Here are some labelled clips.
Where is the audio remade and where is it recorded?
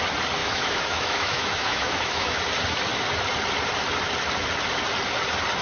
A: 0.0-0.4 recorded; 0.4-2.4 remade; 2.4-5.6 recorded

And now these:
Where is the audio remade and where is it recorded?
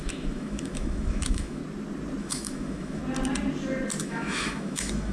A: 0.0-1.6 remade; 1.6-2.2 recorded; 2.2-3.0 remade; 3.0-4.0 recorded; 4.0-5.1 remade